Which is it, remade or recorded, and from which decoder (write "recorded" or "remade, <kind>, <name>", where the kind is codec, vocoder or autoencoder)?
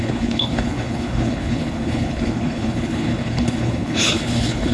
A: remade, codec, HILCodec